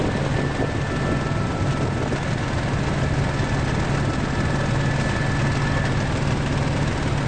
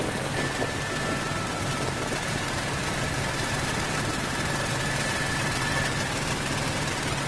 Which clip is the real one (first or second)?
first